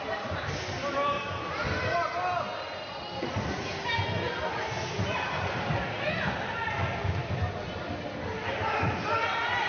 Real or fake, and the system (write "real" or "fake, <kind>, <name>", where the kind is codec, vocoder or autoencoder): real